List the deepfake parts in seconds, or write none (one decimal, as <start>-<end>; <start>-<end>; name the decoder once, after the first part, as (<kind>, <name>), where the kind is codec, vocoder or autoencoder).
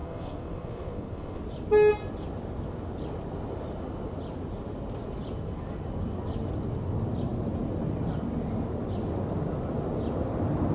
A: 0.0-1.4 (codec, SNAC)